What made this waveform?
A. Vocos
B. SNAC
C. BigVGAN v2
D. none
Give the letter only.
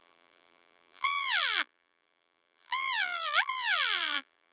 C